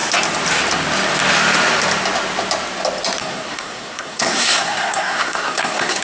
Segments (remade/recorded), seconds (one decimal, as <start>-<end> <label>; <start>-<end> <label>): 0.0-3.2 recorded; 3.2-6.0 remade